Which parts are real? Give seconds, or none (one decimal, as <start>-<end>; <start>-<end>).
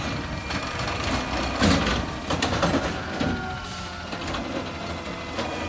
0.0-5.7